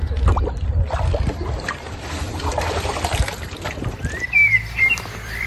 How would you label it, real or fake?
fake